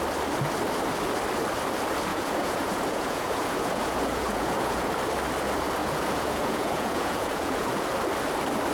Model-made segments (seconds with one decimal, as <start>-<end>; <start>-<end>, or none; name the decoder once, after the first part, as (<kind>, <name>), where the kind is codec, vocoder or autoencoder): 2.1-4.9 (vocoder, Vocos); 5.8-7.7